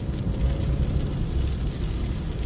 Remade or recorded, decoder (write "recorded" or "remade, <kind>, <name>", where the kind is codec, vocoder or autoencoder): recorded